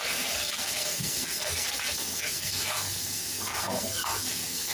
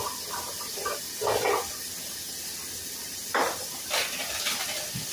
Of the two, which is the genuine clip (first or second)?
second